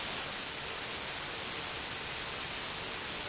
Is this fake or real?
real